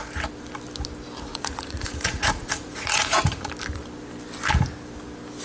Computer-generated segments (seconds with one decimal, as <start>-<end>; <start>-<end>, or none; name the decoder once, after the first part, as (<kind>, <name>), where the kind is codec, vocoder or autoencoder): 1.3-3.5 (vocoder, Vocos)